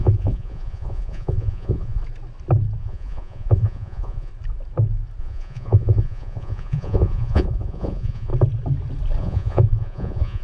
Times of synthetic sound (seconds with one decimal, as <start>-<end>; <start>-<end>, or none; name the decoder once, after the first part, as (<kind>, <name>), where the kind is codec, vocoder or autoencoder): 0.0-2.0 (vocoder, Vocos); 2.8-4.3; 5.2-8.3; 9.2-10.4